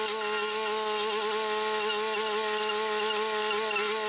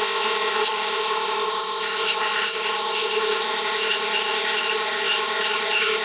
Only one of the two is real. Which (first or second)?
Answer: first